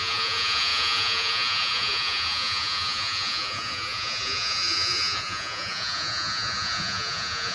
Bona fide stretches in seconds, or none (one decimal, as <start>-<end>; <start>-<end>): none